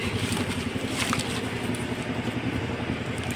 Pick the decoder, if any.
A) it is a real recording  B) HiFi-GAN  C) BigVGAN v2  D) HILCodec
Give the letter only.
C